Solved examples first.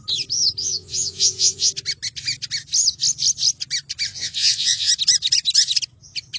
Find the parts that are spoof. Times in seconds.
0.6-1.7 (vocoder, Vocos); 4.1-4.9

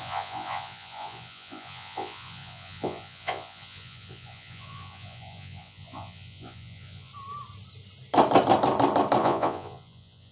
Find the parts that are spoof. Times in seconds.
0.0-7.1 (vocoder, Vocos); 9.2-10.3

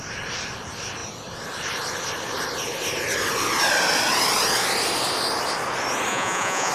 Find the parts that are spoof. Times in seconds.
6.1-6.7 (vocoder, Vocos)